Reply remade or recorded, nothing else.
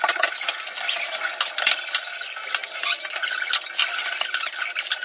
recorded